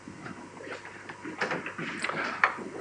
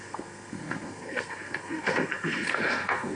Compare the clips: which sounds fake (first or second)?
second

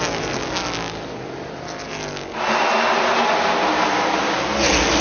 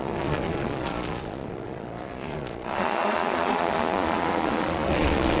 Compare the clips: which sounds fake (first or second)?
second